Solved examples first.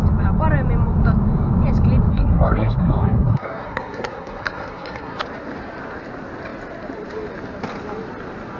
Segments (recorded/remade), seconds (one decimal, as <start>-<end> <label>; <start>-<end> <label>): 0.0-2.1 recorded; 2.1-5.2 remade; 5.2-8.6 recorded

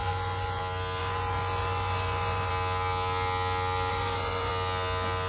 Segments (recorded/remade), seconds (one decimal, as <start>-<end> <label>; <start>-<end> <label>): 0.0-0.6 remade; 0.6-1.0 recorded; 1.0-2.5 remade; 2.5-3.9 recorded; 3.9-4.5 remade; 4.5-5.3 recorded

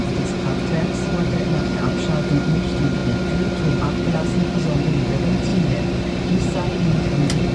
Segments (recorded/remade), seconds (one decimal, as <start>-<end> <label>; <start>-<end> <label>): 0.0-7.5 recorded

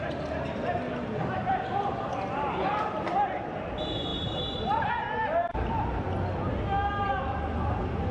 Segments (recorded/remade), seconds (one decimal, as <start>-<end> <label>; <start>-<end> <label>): 0.0-8.1 recorded

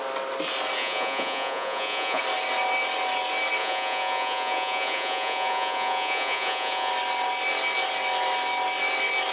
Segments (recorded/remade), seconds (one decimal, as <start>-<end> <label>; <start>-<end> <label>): 0.0-0.8 recorded; 0.8-2.2 remade; 2.2-3.6 recorded; 3.6-6.9 remade; 6.9-9.3 recorded